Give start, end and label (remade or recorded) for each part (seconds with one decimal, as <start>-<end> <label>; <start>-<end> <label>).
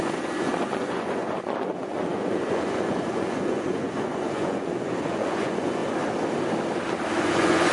0.0-5.8 remade; 5.8-7.2 recorded; 7.2-7.7 remade